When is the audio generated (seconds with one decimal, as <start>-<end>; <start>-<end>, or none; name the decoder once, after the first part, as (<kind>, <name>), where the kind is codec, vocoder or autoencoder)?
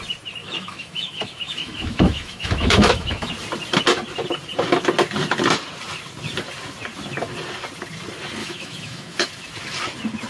0.4-3.3 (autoencoder, DAC-VAE); 8.4-9.3